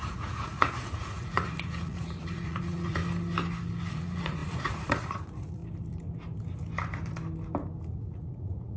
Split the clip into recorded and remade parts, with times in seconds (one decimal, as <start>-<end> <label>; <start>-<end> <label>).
0.0-3.0 remade; 3.0-3.9 recorded; 3.9-5.6 remade; 5.6-8.0 recorded; 8.0-8.8 remade